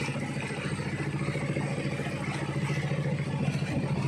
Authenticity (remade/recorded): recorded